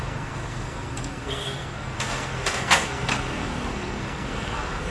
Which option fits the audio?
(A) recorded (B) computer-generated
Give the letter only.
B